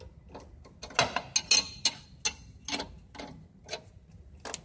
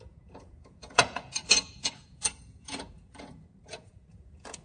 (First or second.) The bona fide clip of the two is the first